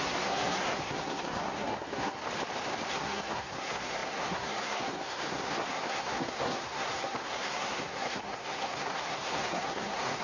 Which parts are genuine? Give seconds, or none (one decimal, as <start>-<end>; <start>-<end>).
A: 2.2-2.9